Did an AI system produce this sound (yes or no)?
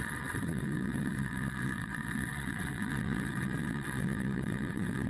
yes